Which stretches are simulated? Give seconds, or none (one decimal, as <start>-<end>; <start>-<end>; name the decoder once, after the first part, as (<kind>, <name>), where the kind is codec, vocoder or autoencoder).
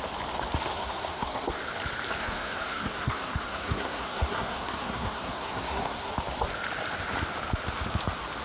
0.7-1.6 (codec, SNAC); 2.2-6.1